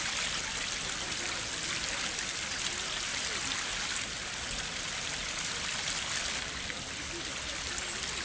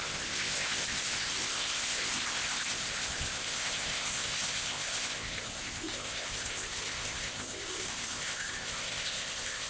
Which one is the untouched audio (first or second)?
first